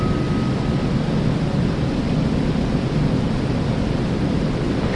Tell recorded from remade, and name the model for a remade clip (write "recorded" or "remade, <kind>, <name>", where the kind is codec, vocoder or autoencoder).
recorded